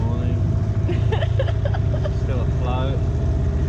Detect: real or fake real